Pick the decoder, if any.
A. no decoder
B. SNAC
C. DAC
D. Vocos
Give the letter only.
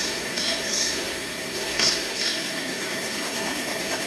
B